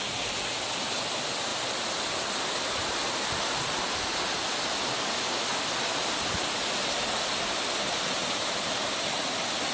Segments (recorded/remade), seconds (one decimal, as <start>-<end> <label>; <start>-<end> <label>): 0.0-9.7 recorded